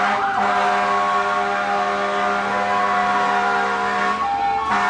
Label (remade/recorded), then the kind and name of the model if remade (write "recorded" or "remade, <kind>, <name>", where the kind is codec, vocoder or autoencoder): recorded